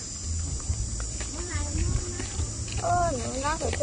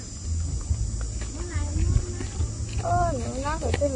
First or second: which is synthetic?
first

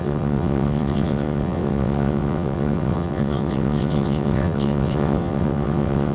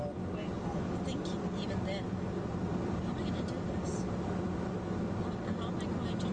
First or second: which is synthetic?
first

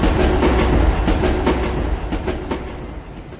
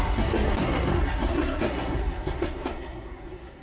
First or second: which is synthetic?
second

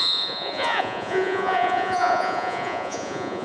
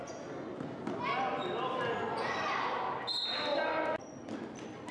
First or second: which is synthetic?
first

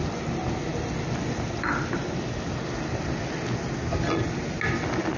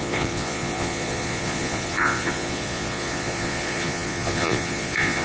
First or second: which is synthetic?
second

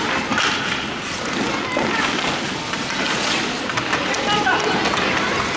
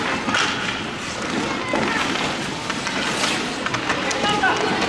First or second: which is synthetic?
first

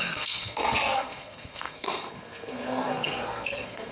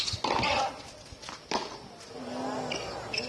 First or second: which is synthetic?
first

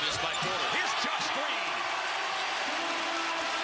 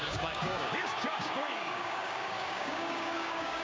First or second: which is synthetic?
second